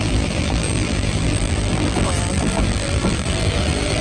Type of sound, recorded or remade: remade